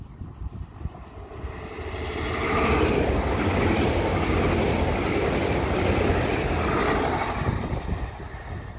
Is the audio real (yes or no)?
yes